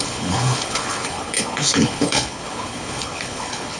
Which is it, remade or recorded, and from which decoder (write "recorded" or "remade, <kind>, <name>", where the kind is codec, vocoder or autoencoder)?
remade, codec, HILCodec